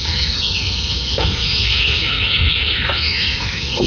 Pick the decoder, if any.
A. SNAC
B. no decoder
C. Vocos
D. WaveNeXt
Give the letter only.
A